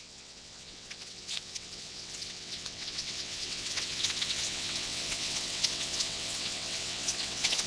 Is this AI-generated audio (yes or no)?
yes